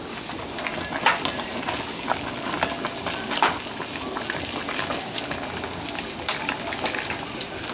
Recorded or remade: recorded